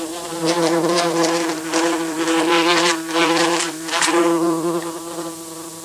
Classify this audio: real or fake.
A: fake